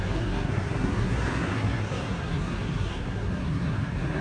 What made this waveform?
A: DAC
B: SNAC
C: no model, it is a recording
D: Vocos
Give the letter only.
B